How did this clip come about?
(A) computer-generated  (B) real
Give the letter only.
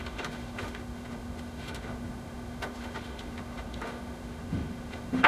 A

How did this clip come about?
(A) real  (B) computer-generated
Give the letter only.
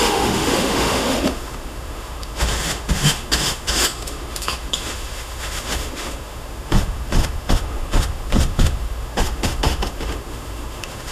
B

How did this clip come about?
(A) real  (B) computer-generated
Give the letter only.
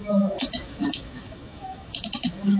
B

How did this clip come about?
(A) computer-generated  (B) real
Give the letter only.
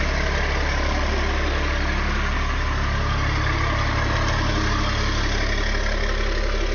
B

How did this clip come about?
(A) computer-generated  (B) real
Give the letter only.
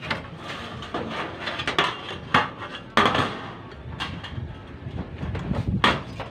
B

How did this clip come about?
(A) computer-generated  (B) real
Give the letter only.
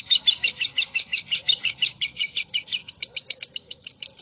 A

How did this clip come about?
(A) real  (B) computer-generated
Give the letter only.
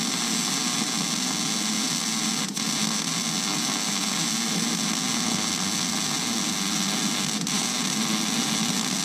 A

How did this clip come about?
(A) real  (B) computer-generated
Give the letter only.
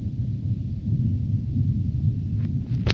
A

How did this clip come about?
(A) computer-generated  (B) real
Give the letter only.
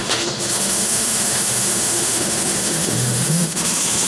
A